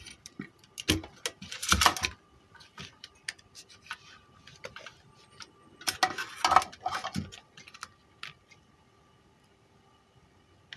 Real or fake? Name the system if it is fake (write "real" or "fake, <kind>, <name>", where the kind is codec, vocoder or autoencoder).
real